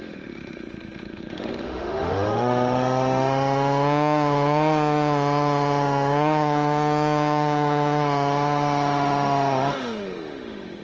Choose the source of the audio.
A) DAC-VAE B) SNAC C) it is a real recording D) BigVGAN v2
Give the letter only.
A